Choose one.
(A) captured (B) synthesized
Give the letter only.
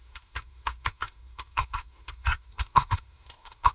B